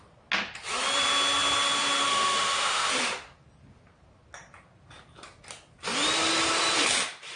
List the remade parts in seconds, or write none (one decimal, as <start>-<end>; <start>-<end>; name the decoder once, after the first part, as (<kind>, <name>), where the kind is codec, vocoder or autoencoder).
2.1-2.9 (autoencoder, DAC-VAE)